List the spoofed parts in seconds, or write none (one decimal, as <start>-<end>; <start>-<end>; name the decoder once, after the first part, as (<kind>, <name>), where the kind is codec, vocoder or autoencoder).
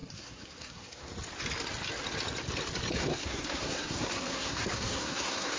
0.0-1.1 (codec, SNAC); 3.0-5.6